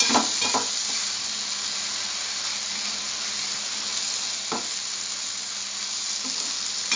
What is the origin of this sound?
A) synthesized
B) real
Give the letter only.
B